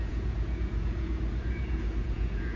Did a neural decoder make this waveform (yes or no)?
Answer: yes